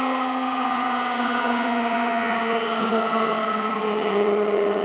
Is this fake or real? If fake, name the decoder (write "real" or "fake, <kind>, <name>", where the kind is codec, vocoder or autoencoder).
fake, vocoder, HiFi-GAN